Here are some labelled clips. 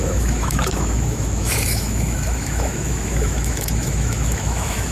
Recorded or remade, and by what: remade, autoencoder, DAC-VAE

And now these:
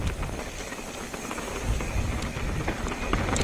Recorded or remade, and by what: recorded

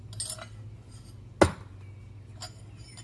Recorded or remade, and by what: recorded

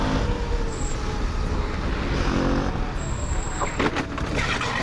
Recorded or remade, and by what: recorded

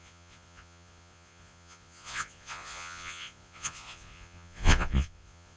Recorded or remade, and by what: remade, vocoder, Vocos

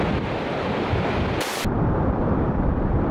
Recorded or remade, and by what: remade, vocoder, BigVGAN v2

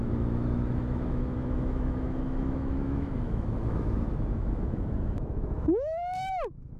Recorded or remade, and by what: remade, autoencoder, DAC-VAE